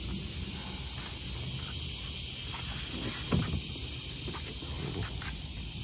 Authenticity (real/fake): real